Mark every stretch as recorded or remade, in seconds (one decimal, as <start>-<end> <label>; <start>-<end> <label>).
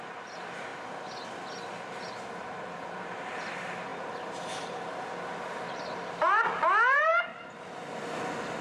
0.0-0.7 remade; 0.7-2.0 recorded; 2.0-7.1 remade; 7.1-8.6 recorded